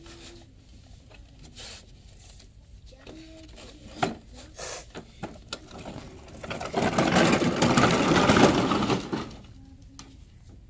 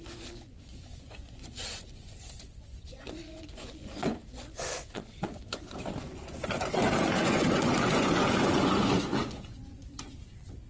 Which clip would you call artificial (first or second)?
second